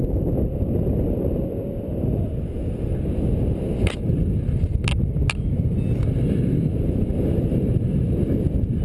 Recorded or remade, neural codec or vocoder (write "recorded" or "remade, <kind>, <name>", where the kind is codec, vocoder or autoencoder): recorded